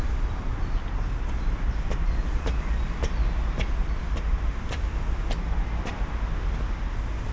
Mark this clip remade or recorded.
recorded